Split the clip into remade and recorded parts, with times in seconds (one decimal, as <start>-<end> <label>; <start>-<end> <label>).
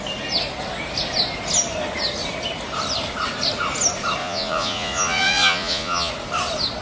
0.0-4.2 recorded; 4.2-6.1 remade; 6.1-6.8 recorded